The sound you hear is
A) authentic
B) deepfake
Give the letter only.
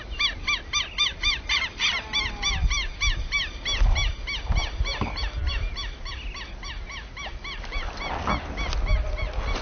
A